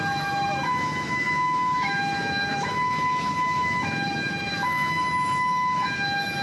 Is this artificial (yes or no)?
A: yes